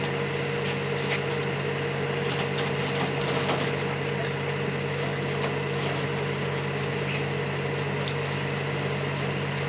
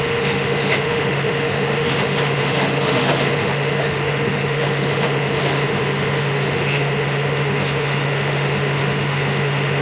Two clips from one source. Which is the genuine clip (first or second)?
first